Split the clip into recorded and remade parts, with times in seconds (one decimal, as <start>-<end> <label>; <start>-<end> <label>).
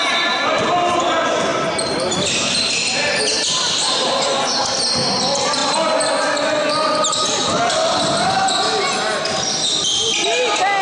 0.0-10.8 recorded